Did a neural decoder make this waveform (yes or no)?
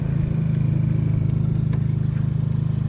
no